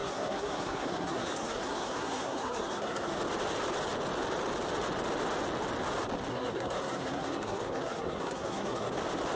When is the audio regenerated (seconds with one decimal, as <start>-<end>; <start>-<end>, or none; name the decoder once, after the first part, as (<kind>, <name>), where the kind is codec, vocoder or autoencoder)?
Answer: 0.0-3.2 (codec, SNAC); 6.3-8.9